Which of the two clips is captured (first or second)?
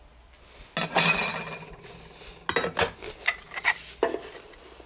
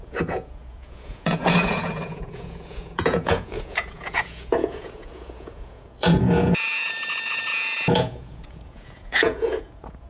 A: first